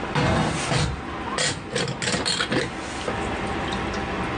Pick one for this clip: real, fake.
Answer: real